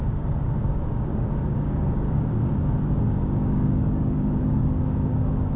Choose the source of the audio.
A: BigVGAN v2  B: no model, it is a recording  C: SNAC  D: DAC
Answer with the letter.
D